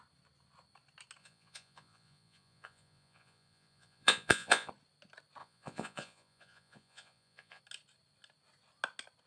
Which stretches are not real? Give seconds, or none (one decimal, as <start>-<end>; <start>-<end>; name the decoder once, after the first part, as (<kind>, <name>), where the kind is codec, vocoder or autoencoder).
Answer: 1.2-4.7 (vocoder, Vocos); 5.4-7.6